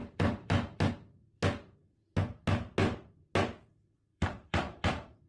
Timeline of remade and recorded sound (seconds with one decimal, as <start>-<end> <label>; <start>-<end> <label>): 0.0-0.9 remade; 0.9-4.1 recorded; 4.1-5.3 remade

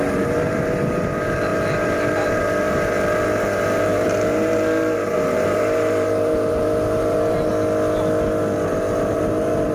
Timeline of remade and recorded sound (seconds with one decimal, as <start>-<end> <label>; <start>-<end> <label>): 0.0-7.5 remade; 7.5-8.7 recorded; 8.7-9.7 remade

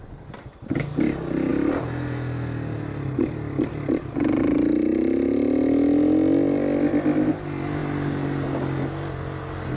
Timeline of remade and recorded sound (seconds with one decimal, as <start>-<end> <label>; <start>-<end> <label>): 0.0-9.8 recorded